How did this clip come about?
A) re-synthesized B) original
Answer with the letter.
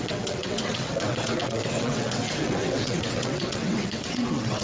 A